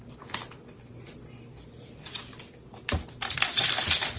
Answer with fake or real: real